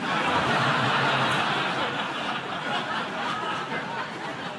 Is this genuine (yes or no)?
yes